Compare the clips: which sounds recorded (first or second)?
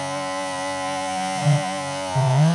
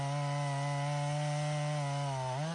second